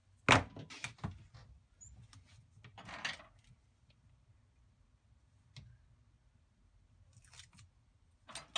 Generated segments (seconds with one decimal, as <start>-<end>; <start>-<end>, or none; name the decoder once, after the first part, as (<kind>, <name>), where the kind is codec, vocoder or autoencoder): none